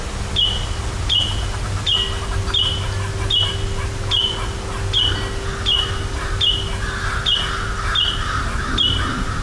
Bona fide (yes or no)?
yes